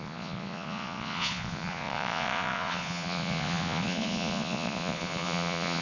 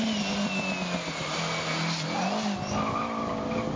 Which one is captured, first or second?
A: second